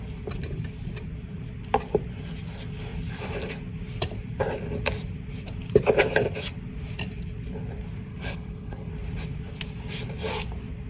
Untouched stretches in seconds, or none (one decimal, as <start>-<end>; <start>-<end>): 0.0-8.1; 8.9-10.9